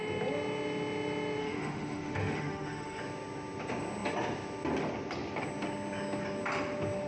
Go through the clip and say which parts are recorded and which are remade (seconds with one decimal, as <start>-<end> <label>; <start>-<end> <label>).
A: 0.0-1.4 recorded; 1.4-3.0 remade; 3.0-7.1 recorded